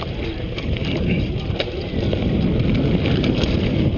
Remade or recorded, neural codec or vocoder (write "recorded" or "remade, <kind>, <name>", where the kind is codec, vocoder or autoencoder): recorded